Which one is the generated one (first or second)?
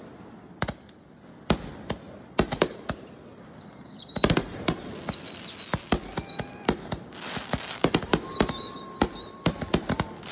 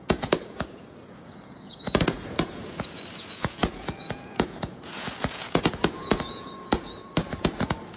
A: second